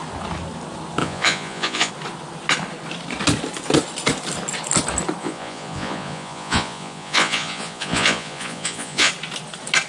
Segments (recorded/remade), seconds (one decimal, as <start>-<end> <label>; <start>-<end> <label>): 0.0-1.0 recorded; 1.0-1.9 remade; 1.9-5.2 recorded; 5.2-9.1 remade; 9.1-9.9 recorded